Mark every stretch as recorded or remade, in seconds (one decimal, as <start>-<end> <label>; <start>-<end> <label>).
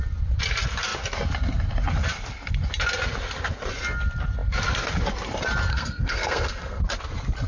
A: 0.0-5.7 recorded; 5.7-6.8 remade; 6.8-7.5 recorded